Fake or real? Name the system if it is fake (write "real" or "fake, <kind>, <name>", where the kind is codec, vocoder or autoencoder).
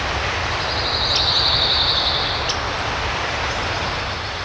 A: real